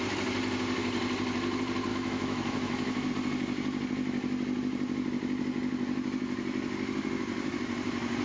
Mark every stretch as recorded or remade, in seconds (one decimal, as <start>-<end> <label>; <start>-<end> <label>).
0.0-1.9 recorded; 1.9-3.1 remade; 3.1-8.2 recorded